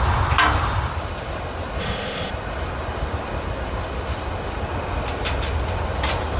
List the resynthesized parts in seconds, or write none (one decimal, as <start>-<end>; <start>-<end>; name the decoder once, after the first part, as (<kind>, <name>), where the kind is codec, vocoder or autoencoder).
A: 1.8-2.3 (codec, ZipCodec)